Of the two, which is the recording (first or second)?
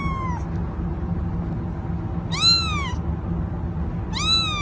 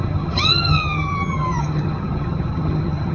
first